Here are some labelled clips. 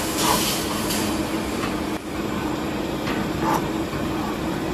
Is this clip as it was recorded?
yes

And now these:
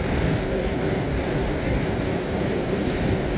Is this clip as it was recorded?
no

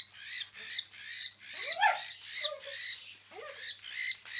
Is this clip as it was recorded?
yes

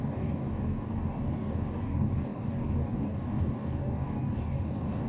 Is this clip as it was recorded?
no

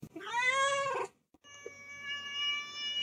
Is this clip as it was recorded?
yes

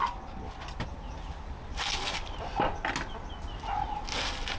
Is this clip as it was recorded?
yes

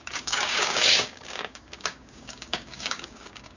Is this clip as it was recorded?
no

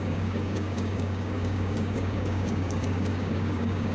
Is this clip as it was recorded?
no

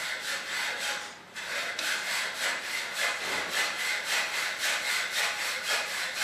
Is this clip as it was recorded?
yes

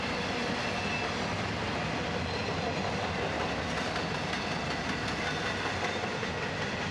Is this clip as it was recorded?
yes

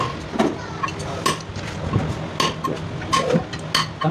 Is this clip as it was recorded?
yes